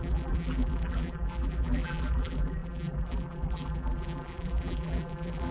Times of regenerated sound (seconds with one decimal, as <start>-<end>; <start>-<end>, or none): 0.0-5.5

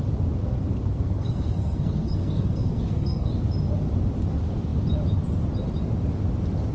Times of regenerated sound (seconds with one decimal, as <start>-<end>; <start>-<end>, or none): 0.4-3.3

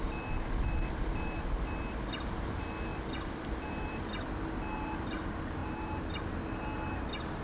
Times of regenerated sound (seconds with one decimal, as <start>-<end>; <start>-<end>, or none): 5.6-6.2

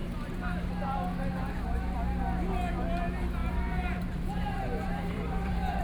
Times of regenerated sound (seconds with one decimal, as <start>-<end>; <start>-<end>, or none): 0.0-0.7; 3.4-5.8

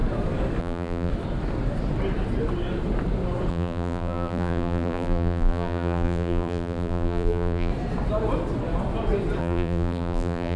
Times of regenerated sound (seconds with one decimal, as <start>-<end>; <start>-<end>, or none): 0.6-1.1; 3.5-7.7; 9.4-10.6

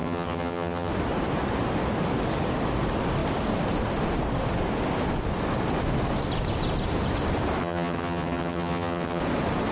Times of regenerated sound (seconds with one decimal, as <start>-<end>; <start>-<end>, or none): 0.0-0.9; 7.6-9.2

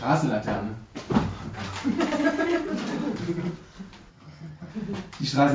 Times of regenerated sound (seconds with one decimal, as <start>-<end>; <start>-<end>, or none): 4.1-4.7